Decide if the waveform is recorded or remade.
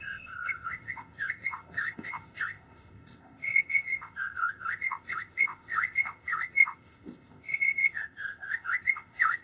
remade